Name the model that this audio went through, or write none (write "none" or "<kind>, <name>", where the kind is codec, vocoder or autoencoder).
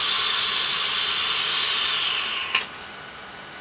none